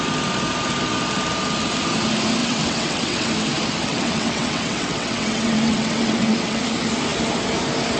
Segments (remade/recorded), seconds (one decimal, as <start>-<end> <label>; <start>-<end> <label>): 0.0-2.4 recorded; 2.4-3.3 remade; 3.3-3.9 recorded; 3.9-6.6 remade; 6.6-8.0 recorded